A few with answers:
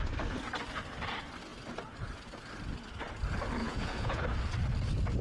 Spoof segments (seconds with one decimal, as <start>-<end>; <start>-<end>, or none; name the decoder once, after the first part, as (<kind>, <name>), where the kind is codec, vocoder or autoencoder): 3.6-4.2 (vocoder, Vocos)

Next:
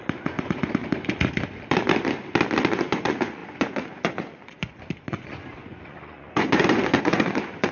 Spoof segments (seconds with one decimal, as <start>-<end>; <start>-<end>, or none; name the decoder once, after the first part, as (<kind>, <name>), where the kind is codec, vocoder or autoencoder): 0.0-0.8 (vocoder, Vocos); 2.7-7.7

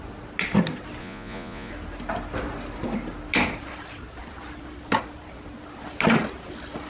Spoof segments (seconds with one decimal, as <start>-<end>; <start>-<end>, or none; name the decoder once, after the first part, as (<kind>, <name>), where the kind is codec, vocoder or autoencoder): 1.0-1.7 (vocoder, Vocos)

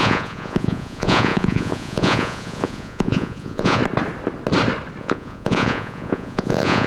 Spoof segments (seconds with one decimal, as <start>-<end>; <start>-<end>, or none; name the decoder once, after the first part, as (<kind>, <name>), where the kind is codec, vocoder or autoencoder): 0.0-3.8 (vocoder, Vocos); 5.0-6.9

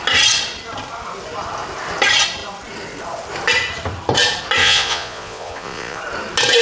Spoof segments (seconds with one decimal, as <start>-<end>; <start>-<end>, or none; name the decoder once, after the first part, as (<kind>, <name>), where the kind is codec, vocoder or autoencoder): 4.6-6.0 (vocoder, Vocos)